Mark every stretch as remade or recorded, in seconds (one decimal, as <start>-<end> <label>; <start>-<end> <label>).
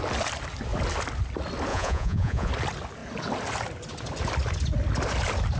0.0-1.7 recorded; 1.7-2.5 remade; 2.5-5.6 recorded